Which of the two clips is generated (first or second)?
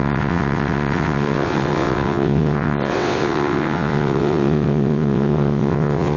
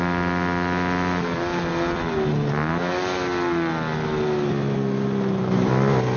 first